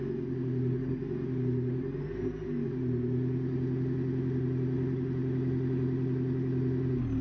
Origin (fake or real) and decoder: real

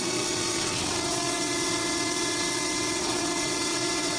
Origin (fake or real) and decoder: fake, vocoder, WaveNeXt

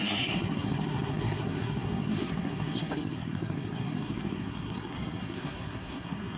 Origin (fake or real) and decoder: fake, codec, SNAC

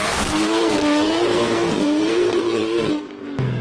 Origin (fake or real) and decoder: fake, codec, SNAC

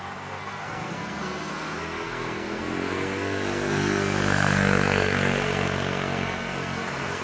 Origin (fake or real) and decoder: fake, codec, SNAC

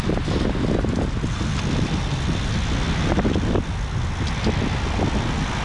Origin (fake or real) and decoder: real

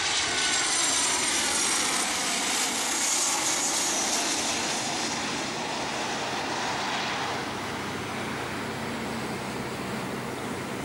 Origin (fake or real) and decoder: real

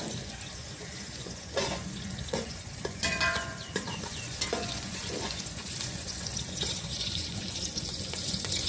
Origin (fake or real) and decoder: fake, vocoder, Vocos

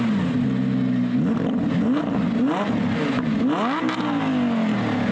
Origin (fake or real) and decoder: real